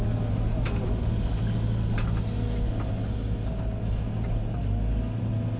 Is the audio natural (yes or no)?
yes